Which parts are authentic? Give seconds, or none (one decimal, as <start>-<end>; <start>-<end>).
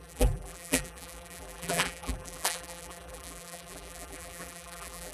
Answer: none